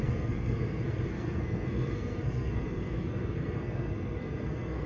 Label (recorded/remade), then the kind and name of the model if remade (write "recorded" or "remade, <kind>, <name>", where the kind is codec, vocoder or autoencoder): remade, codec, SNAC